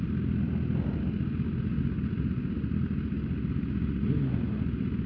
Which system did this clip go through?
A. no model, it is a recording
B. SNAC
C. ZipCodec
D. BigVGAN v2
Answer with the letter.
A